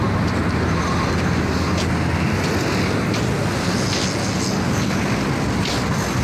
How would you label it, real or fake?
real